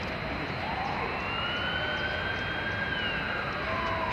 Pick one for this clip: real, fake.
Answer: real